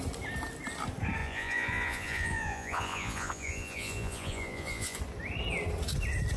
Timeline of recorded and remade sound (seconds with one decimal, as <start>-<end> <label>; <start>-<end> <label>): 0.0-1.2 recorded; 1.2-5.0 remade; 5.0-6.4 recorded